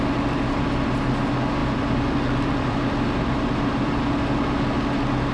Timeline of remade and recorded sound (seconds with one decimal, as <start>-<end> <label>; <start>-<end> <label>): 0.0-1.6 recorded; 1.6-4.0 remade; 4.0-5.3 recorded